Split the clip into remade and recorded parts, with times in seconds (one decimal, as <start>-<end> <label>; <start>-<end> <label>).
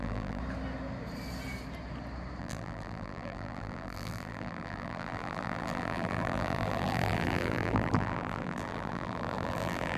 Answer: 0.0-0.4 remade; 0.4-2.4 recorded; 2.4-10.0 remade